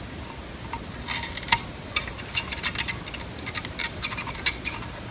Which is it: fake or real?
real